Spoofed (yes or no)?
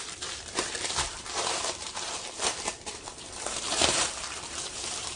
yes